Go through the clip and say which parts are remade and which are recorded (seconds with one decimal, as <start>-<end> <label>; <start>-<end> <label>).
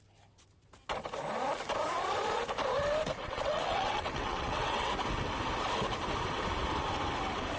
0.0-3.2 recorded; 3.2-4.9 remade; 4.9-7.6 recorded